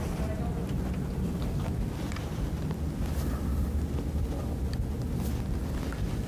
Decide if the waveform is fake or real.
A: real